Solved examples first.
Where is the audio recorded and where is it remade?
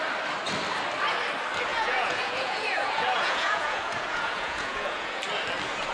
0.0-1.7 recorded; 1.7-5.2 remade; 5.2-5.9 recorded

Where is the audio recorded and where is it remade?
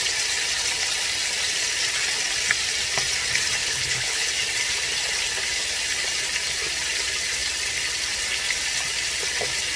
0.0-3.6 recorded; 3.6-4.3 remade; 4.3-9.8 recorded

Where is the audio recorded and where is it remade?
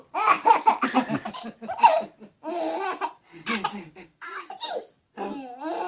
0.0-3.7 recorded; 3.7-4.2 remade; 4.2-5.9 recorded